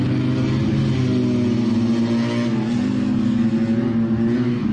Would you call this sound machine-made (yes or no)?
no